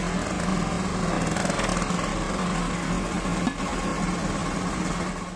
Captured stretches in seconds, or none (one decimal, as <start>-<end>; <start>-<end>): 0.0-5.4